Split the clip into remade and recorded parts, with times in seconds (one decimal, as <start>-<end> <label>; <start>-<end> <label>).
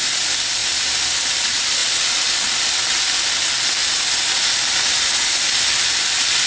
0.0-6.5 recorded